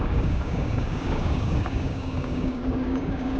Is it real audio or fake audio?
fake